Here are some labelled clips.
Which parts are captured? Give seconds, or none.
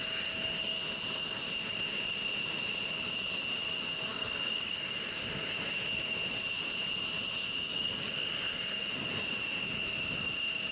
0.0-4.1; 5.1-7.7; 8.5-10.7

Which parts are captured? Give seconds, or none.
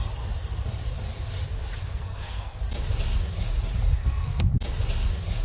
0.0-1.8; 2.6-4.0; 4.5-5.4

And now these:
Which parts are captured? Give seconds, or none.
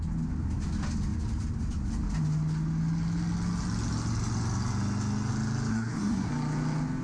0.0-5.7; 6.3-7.0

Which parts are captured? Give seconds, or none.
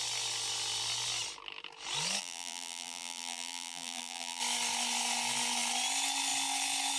0.0-2.2; 4.4-7.0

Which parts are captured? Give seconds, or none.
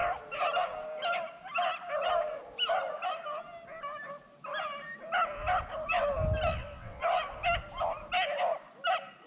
0.0-6.5; 7.0-9.3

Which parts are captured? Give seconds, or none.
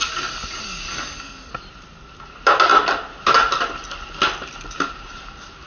0.0-0.9; 1.5-5.7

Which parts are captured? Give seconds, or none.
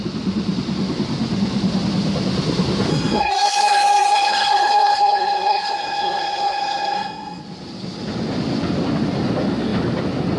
0.0-2.9; 7.4-10.4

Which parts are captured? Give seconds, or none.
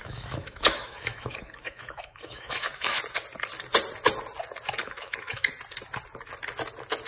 3.0-4.8; 5.5-7.1